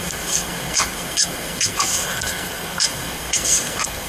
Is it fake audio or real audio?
fake